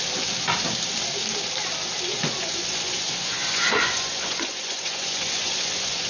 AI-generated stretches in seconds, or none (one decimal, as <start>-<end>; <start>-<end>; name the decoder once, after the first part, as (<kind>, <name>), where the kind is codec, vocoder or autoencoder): 2.1-6.1 (vocoder, Vocos)